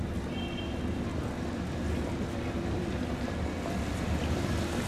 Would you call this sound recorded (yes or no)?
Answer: yes